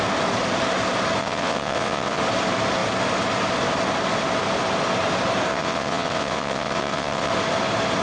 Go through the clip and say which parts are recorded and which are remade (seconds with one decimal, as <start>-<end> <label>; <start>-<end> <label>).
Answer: 0.0-1.2 recorded; 1.2-2.2 remade; 2.2-5.5 recorded; 5.5-7.3 remade; 7.3-8.0 recorded